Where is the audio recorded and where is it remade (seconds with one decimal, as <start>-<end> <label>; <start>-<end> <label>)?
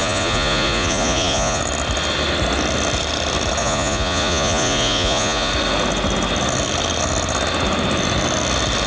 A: 0.0-1.6 remade; 1.6-3.6 recorded; 3.6-5.5 remade; 5.5-8.9 recorded